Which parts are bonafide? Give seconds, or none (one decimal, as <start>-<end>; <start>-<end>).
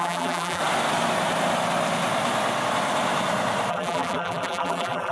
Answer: 0.6-3.7